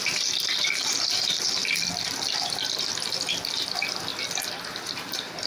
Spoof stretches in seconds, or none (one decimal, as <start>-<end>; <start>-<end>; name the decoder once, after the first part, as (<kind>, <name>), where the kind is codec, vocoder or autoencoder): 0.0-1.6 (vocoder, BigVGAN v2); 2.4-2.9; 3.5-4.1; 4.7-5.5